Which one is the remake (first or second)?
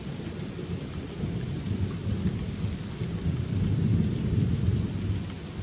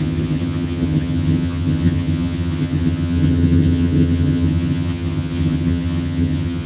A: second